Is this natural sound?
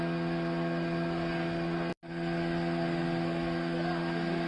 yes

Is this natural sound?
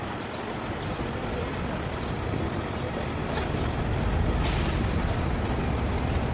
yes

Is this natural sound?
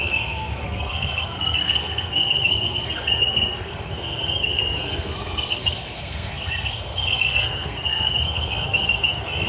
no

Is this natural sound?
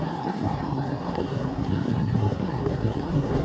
no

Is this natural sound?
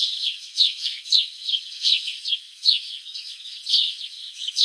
no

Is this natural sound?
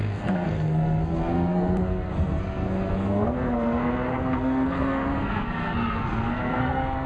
no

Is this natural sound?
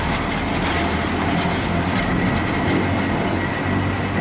yes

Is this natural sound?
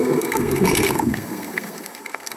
no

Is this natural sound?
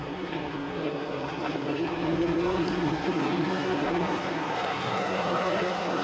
no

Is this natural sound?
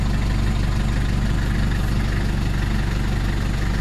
yes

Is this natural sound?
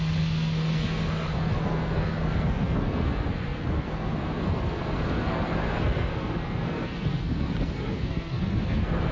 no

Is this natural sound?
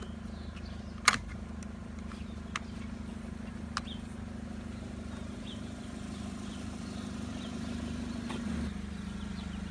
yes